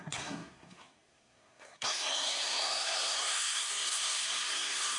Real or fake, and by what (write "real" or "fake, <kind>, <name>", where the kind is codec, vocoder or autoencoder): fake, codec, SNAC